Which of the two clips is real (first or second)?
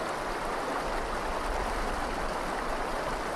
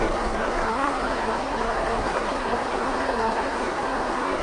first